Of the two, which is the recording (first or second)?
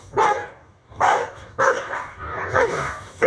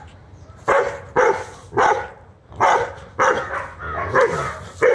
second